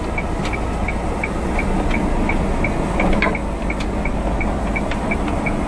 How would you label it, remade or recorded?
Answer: recorded